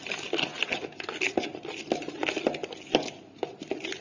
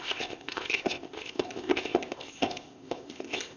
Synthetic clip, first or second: second